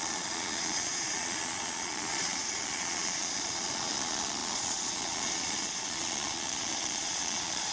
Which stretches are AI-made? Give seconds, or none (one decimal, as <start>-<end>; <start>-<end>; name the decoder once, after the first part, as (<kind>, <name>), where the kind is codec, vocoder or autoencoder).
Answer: 0.0-7.7 (vocoder, Vocos)